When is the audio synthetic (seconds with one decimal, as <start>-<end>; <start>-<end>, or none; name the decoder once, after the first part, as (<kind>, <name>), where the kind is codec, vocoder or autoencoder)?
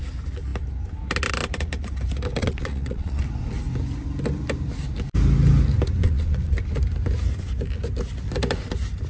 2.4-3.2 (vocoder, Vocos); 6.0-6.5